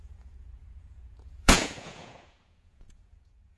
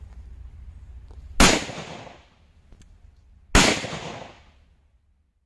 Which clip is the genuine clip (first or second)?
second